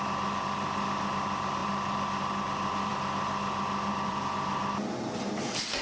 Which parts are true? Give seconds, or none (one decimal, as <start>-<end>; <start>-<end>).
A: 0.0-5.8